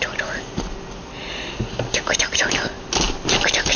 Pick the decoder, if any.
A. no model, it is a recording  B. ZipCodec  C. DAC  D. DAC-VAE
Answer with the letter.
A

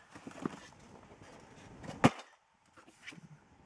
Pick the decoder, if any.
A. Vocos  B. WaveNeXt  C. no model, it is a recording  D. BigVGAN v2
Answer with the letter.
C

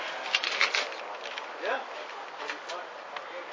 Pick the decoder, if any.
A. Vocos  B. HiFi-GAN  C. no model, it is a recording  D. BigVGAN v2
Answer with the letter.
C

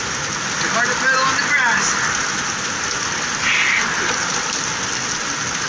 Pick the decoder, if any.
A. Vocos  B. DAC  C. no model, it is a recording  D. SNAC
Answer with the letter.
C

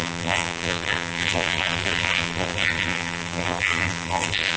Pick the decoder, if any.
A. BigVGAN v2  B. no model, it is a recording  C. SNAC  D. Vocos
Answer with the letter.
A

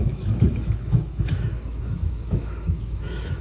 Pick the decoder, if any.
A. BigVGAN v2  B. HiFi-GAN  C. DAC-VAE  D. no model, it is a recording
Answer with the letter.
C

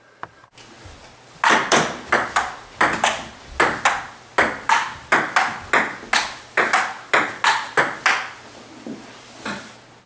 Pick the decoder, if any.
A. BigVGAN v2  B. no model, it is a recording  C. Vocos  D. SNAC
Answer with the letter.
B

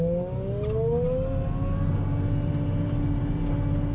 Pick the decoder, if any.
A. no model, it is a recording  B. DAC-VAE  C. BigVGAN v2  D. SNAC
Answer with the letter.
A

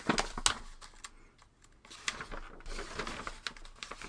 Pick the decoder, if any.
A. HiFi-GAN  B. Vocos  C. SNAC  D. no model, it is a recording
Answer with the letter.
D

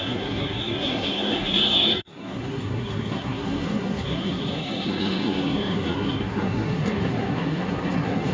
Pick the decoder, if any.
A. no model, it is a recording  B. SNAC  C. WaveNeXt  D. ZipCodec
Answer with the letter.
B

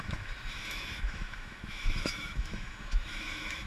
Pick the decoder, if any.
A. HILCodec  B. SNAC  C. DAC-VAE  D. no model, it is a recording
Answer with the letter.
C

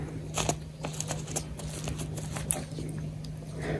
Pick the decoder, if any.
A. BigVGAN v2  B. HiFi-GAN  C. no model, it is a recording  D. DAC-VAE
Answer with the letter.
C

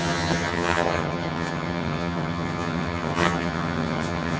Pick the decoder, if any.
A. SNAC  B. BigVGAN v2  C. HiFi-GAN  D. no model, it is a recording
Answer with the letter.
C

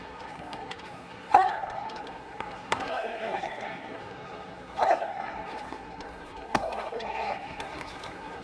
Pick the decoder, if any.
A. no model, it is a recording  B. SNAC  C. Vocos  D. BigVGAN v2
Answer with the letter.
B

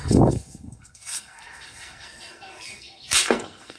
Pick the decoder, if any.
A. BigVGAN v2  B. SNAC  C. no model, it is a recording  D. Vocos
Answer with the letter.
B